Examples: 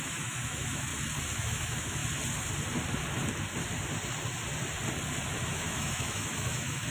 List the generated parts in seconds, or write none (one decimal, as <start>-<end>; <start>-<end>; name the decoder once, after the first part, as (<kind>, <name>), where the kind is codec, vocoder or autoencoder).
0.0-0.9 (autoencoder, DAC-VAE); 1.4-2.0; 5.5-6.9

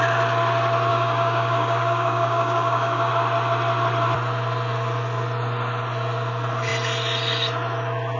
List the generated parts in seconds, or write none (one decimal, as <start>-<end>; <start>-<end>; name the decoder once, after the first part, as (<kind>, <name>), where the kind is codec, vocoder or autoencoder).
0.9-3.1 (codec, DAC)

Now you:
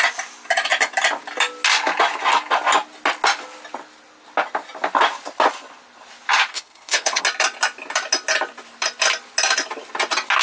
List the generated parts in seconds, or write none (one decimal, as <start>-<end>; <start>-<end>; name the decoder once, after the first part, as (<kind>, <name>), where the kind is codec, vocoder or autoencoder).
6.5-7.2 (codec, HILCodec)

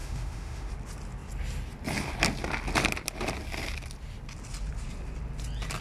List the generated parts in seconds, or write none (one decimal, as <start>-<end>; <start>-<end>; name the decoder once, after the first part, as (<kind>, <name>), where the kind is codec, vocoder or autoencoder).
0.0-0.7 (autoencoder, DAC-VAE)

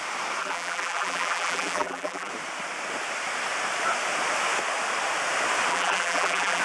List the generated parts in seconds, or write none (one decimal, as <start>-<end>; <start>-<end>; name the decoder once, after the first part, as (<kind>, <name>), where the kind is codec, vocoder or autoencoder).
0.4-2.3 (vocoder, BigVGAN v2); 5.7-6.6

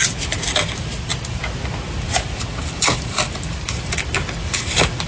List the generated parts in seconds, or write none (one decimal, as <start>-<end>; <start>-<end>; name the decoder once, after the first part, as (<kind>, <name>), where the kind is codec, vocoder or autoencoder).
none